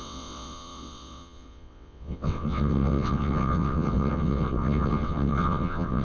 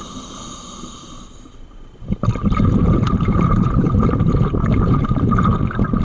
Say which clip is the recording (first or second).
second